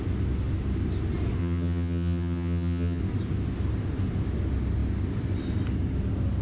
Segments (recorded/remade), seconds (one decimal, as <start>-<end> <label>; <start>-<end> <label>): 0.0-1.4 recorded; 1.4-3.0 remade; 3.0-6.4 recorded